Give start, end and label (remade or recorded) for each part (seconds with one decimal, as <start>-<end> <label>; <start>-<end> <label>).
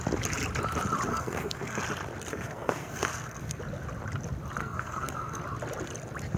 0.0-1.1 recorded; 1.1-1.8 remade; 1.8-2.3 recorded; 2.3-3.6 remade; 3.6-4.6 recorded; 4.6-5.4 remade; 5.4-6.4 recorded